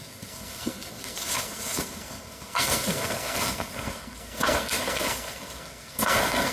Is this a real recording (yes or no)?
no